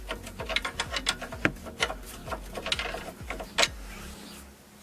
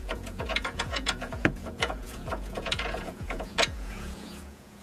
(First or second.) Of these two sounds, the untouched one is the first